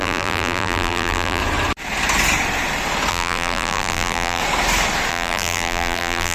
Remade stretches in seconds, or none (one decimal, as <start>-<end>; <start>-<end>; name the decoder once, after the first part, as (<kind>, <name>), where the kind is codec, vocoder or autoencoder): 0.0-1.4 (vocoder, BigVGAN v2); 3.1-4.4; 5.1-6.3